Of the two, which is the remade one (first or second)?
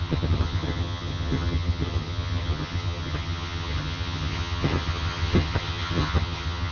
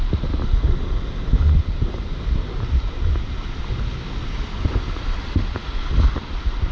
first